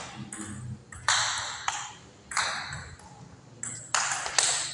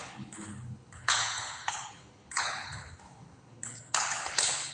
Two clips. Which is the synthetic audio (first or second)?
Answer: second